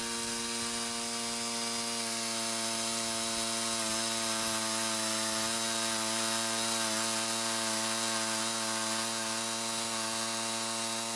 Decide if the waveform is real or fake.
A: real